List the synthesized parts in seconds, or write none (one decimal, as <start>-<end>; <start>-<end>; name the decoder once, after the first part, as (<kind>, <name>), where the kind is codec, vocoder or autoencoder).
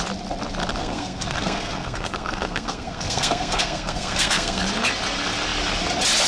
0.8-4.6 (codec, SNAC)